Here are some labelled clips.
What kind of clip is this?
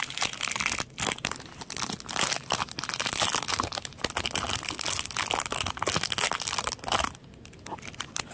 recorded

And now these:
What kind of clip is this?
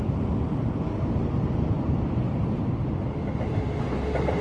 recorded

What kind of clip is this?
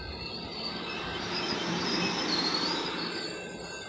recorded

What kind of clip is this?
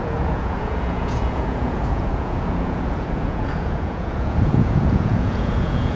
remade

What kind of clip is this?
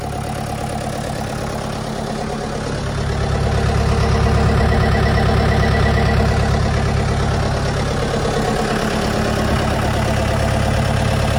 recorded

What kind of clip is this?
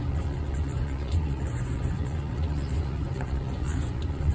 remade